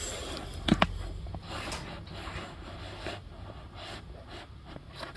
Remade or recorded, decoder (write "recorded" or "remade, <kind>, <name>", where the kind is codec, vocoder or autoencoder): recorded